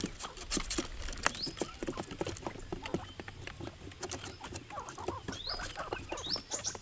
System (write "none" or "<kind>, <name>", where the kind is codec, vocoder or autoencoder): none